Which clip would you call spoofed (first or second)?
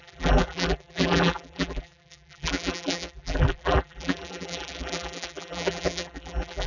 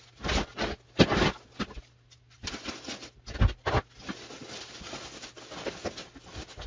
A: first